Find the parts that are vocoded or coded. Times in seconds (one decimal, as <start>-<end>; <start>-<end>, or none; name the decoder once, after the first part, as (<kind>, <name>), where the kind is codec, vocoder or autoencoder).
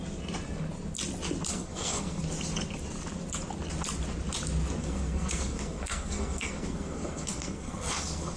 1.5-2.2 (codec, SNAC); 4.8-8.4